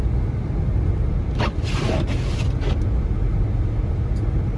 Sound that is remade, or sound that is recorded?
recorded